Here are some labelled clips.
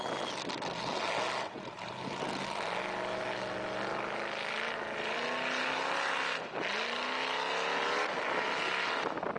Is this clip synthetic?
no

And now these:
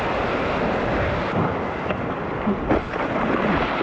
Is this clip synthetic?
no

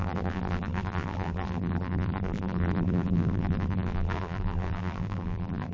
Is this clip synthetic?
yes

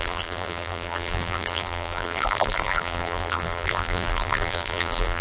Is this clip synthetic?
yes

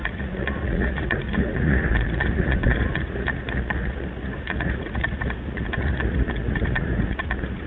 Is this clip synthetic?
yes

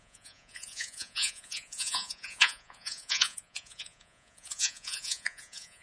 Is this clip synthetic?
yes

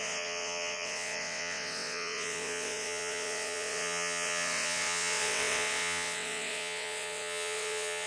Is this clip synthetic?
yes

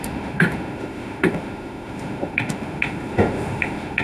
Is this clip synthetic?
yes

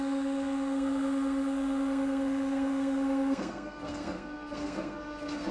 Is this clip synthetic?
yes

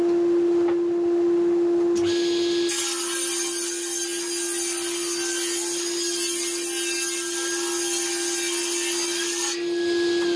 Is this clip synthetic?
no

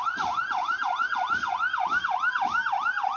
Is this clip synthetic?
no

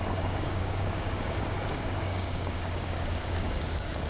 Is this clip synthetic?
yes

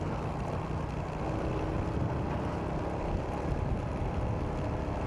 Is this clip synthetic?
no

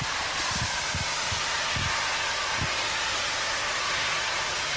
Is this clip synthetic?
no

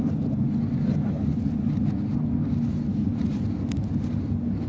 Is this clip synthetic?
no